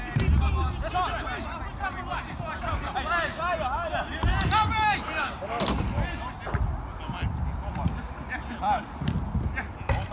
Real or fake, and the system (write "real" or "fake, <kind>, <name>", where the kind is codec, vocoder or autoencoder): real